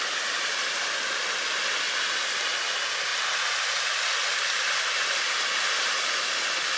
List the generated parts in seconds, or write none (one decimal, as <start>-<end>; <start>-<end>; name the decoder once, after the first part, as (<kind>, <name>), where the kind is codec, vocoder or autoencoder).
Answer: 4.2-5.9 (vocoder, BigVGAN v2)